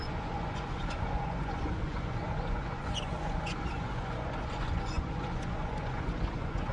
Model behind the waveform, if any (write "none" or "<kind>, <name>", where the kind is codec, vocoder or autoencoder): vocoder, Vocos